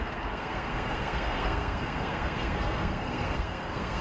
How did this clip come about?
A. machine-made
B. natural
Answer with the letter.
A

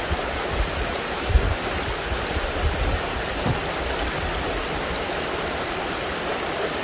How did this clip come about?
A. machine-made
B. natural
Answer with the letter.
B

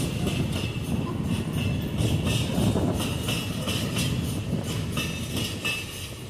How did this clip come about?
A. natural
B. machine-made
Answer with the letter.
A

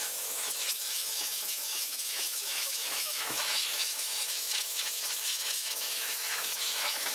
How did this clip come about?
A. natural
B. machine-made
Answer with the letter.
B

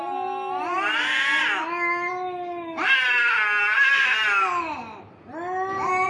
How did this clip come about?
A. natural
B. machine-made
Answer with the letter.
A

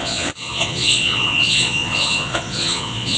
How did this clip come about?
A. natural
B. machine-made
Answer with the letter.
B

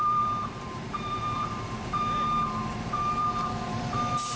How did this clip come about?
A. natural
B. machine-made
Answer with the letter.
B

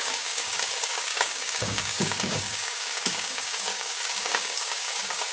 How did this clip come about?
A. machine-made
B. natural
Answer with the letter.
A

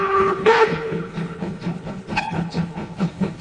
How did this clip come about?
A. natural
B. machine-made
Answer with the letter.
B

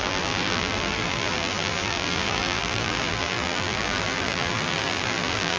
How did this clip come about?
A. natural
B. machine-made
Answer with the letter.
B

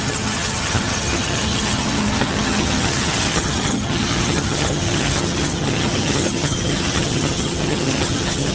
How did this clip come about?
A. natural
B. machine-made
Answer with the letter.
B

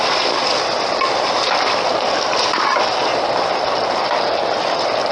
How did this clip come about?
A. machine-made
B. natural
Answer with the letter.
B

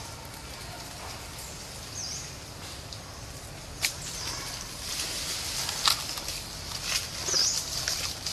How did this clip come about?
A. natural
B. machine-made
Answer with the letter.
A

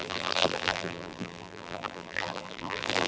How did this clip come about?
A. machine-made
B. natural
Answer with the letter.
A